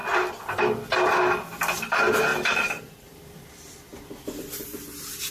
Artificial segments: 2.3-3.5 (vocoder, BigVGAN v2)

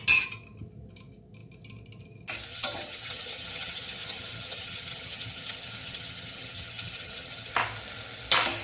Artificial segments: 2.5-7.5 (vocoder, HiFi-GAN)

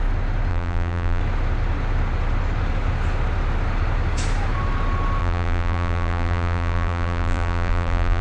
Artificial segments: 0.5-1.2 (vocoder, BigVGAN v2); 5.2-8.2

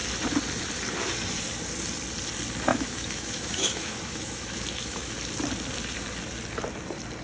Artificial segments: 2.7-5.1 (autoencoder, DAC-VAE)